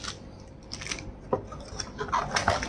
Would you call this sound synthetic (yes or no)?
no